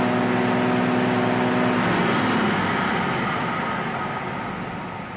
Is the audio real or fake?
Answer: real